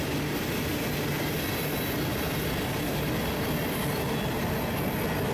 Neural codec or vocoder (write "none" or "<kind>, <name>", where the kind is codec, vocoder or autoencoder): none